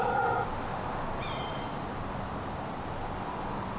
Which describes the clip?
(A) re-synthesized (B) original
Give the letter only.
B